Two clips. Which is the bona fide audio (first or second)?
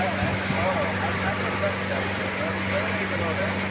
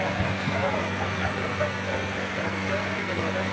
first